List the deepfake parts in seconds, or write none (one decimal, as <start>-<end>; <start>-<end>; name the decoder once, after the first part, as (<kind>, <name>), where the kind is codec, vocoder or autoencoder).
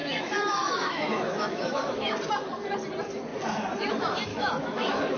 0.0-2.1 (autoencoder, DAC-VAE); 4.3-5.2